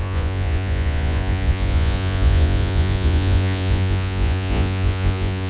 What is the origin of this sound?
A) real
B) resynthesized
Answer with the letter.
B